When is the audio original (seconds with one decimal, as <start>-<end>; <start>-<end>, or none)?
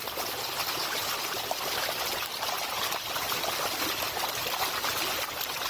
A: 0.0-1.0; 4.0-5.7